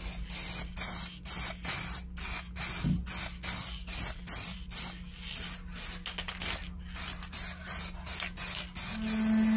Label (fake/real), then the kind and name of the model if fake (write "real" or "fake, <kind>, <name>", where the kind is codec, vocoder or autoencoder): real